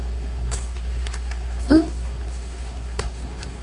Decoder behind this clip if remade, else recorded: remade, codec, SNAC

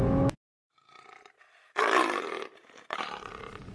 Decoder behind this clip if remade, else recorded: recorded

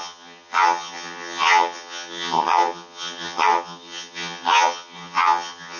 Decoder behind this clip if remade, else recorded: remade, vocoder, HiFi-GAN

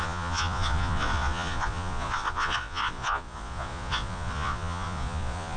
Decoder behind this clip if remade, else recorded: remade, vocoder, Vocos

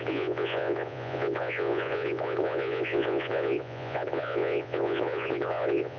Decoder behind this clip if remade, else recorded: remade, vocoder, Vocos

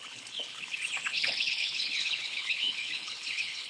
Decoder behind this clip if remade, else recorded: remade, codec, HILCodec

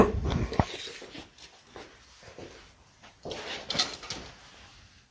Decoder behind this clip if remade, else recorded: recorded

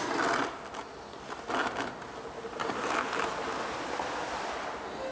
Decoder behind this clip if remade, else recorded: recorded